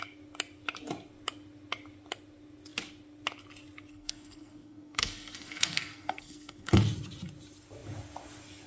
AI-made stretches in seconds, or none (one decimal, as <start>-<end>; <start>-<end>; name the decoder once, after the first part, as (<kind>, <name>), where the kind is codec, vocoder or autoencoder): 3.9-6.8 (codec, SNAC)